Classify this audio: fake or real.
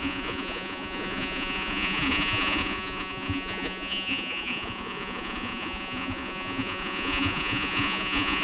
fake